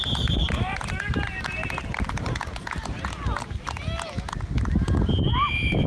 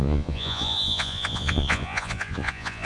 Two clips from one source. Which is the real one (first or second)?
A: first